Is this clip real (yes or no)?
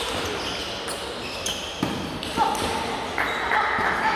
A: yes